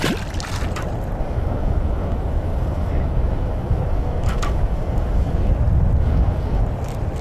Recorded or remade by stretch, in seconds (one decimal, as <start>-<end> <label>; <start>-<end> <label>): 0.0-1.2 recorded; 1.2-5.5 remade; 5.5-6.0 recorded; 6.0-6.6 remade; 6.6-7.2 recorded